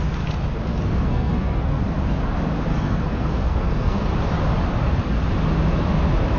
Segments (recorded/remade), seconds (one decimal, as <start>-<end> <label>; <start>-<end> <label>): 0.0-0.7 recorded; 0.7-1.8 remade; 1.8-2.7 recorded; 2.7-4.1 remade; 4.1-6.4 recorded